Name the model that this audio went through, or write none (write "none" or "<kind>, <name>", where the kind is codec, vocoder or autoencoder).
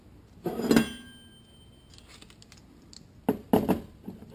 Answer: none